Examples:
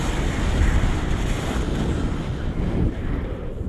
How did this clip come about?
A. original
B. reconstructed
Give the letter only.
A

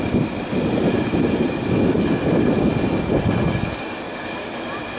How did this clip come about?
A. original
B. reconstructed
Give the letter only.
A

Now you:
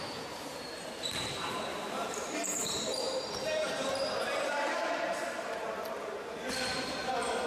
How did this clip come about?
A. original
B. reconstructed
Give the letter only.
B